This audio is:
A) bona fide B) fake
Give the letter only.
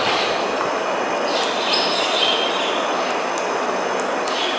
A